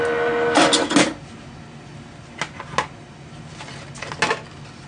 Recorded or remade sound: recorded